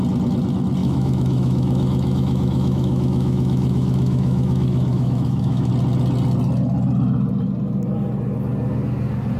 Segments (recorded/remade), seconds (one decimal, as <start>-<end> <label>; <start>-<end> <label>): 0.0-0.8 recorded; 0.8-5.7 remade; 5.7-9.4 recorded